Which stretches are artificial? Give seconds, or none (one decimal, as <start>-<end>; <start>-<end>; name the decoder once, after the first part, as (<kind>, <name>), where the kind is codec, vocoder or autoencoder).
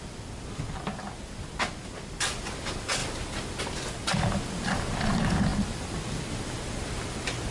none